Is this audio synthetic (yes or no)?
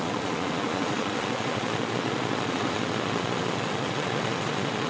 yes